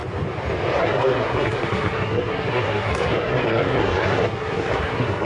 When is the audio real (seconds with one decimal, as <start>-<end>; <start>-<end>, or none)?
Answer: 0.0-0.8